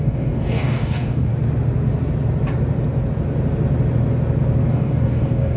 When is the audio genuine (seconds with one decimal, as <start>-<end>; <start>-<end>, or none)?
1.3-4.7